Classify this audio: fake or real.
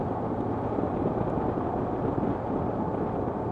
real